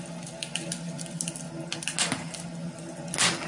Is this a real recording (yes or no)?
yes